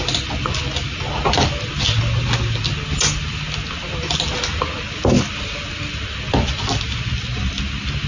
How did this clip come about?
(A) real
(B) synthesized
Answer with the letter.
A